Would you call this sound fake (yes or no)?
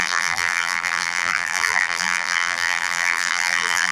yes